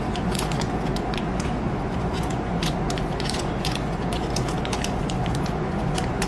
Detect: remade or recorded remade